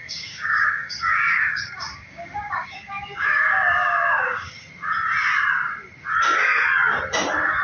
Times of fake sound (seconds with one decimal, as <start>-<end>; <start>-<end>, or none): 0.0-4.5